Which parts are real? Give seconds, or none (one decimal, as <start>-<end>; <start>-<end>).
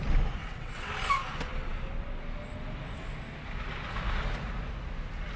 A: 0.0-0.4; 0.9-5.4